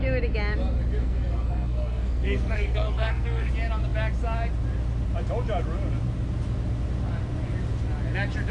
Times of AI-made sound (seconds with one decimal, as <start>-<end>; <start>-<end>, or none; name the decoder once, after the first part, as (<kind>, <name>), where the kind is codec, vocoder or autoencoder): 1.0-3.5 (codec, SNAC)